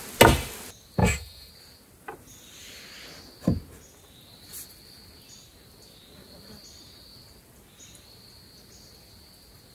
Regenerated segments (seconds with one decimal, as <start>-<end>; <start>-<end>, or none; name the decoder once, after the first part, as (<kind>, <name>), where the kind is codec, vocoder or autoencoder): 1.0-1.5 (autoencoder, DAC-VAE)